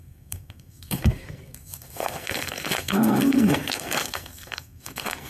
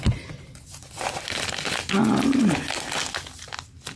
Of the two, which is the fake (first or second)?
first